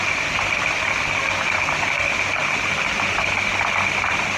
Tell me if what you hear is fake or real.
real